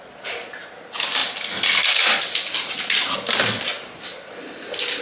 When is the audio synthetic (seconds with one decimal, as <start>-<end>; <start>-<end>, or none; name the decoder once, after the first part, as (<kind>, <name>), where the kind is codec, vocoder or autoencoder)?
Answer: none